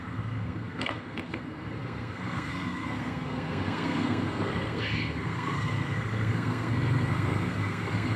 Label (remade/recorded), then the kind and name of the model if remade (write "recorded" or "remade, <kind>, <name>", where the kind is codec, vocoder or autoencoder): remade, codec, SNAC